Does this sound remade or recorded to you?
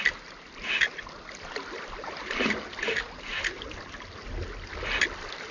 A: recorded